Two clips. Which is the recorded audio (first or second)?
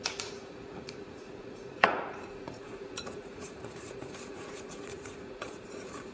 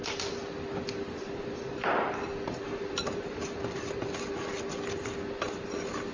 second